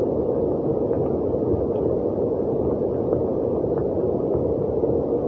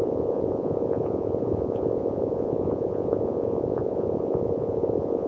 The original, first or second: first